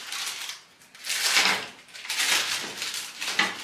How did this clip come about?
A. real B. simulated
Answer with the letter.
A